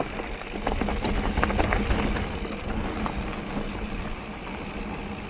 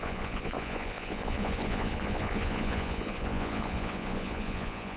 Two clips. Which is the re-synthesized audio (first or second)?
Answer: second